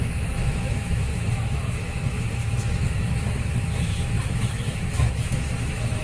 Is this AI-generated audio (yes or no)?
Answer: yes